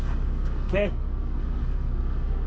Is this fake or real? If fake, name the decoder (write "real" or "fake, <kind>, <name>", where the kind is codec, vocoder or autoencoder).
fake, codec, SNAC